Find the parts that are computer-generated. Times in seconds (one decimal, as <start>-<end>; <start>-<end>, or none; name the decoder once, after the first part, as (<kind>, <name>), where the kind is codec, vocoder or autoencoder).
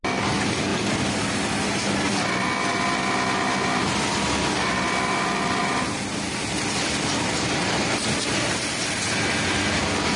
0.7-1.2 (vocoder, BigVGAN v2)